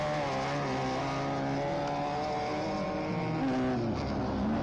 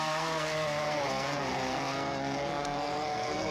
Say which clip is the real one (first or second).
first